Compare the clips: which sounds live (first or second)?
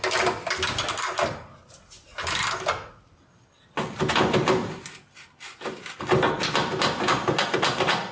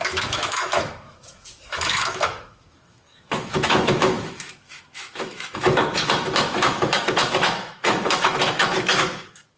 first